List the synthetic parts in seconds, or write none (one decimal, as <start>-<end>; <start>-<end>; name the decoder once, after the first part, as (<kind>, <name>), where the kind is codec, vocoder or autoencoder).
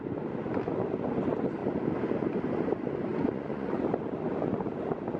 3.1-3.8 (vocoder, Vocos)